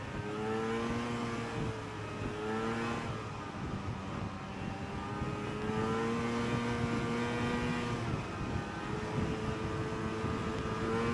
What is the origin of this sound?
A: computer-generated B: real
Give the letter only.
B